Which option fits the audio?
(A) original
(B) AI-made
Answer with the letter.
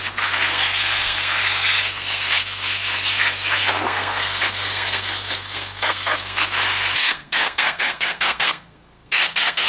B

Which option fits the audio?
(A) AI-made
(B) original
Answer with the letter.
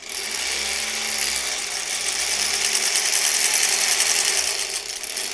B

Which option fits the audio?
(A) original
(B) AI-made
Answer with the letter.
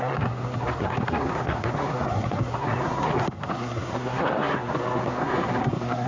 B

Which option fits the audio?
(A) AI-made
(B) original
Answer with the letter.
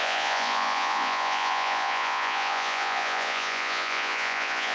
A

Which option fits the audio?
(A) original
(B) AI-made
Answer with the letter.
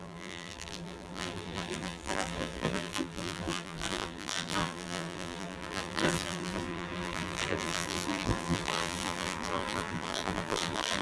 B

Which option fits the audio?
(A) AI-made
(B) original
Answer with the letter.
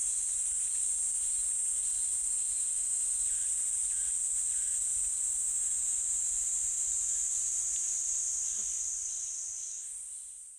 B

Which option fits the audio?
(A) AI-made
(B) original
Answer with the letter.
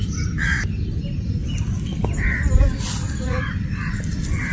B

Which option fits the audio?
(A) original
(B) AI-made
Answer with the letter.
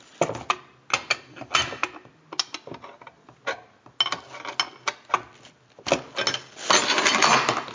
A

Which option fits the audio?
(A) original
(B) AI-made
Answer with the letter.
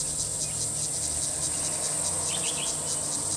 A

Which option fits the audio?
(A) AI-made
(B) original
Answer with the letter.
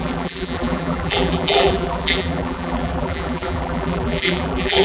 A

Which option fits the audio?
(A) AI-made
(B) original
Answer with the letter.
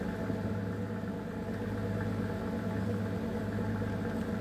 B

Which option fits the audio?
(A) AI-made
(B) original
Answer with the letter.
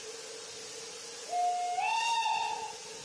B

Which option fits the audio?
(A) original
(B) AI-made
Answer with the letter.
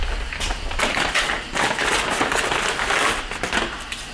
A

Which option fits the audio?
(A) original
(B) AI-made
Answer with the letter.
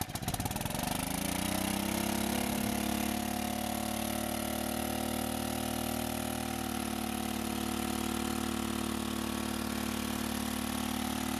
A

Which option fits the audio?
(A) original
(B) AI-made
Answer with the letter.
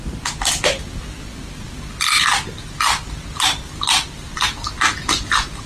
A